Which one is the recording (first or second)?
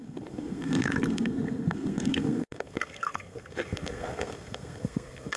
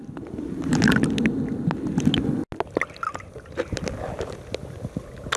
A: second